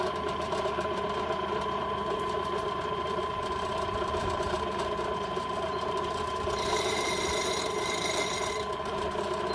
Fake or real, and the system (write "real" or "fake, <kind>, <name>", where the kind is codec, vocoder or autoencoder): fake, vocoder, BigVGAN v2